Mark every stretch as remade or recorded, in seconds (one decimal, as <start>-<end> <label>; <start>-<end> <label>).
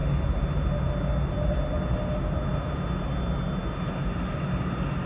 0.0-5.1 recorded